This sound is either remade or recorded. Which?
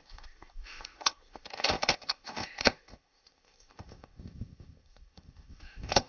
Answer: remade